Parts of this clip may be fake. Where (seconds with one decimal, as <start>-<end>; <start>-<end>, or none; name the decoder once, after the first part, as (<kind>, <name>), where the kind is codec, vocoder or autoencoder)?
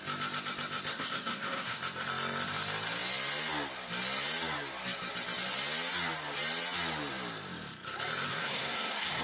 0.9-1.8 (codec, SNAC); 8.3-9.2